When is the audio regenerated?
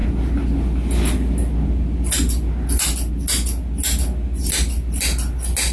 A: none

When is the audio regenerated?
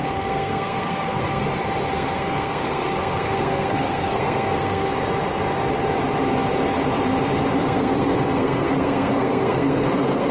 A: 0.0-1.4 (codec, SNAC); 1.9-4.9; 7.6-10.3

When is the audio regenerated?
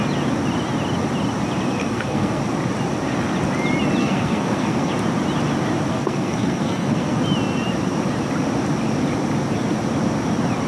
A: 1.8-2.4 (codec, SNAC); 4.0-4.9; 5.9-7.2